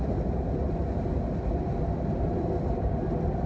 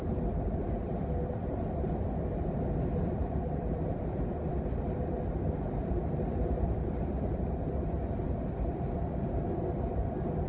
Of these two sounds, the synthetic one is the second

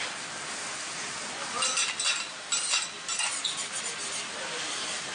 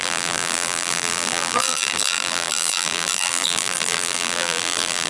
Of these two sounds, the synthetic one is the second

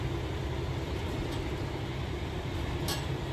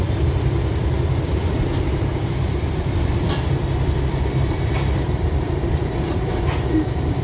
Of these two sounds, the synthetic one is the second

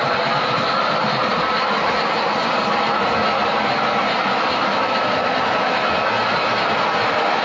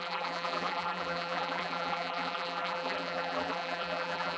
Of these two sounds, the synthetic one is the second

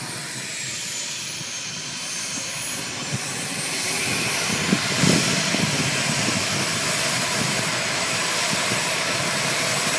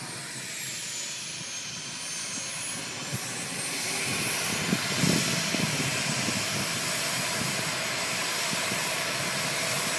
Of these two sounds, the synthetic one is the first